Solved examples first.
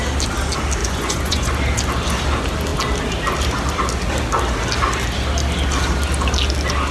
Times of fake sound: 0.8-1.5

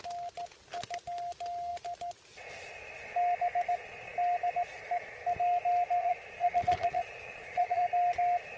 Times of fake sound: 6.0-7.8

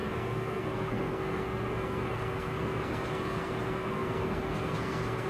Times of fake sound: 0.0-5.3

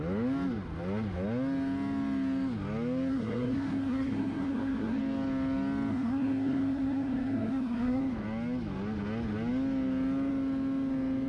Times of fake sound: 3.1-5.0; 5.9-8.0

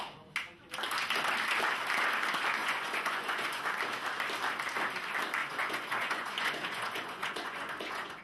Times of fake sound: 2.6-3.6; 5.4-8.2

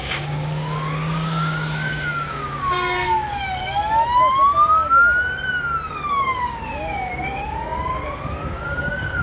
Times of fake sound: 0.0-3.8; 5.9-9.2